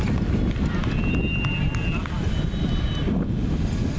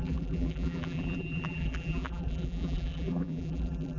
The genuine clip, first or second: first